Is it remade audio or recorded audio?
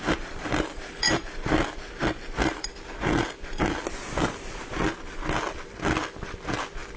recorded